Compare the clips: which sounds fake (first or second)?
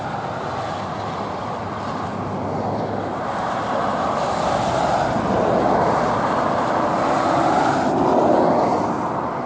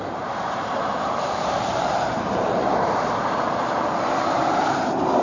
second